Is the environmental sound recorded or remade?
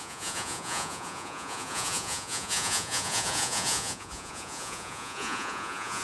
remade